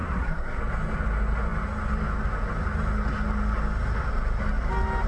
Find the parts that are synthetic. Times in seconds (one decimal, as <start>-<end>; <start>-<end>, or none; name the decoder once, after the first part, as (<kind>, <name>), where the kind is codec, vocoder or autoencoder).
0.0-0.6 (codec, SNAC)